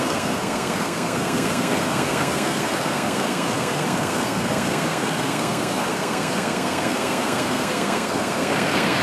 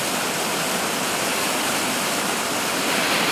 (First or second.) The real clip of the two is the second